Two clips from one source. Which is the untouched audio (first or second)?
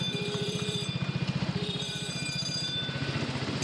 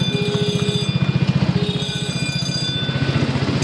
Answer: second